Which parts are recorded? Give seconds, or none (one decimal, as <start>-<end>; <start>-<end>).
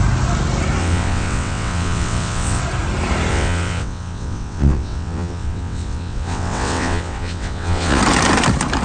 0.0-0.8; 2.6-3.3; 8.0-8.8